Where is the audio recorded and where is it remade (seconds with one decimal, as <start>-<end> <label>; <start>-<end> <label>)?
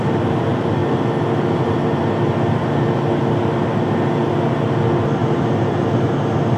0.0-5.2 recorded; 5.2-6.1 remade; 6.1-6.6 recorded